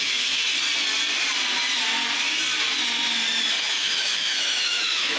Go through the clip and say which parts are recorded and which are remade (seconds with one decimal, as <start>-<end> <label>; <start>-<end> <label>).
0.0-0.5 remade; 0.5-3.6 recorded; 3.6-5.2 remade